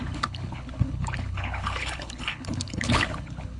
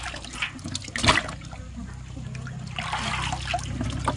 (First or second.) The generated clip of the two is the first